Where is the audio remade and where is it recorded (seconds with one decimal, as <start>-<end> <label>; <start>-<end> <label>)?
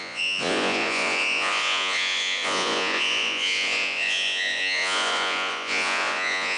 0.0-6.6 remade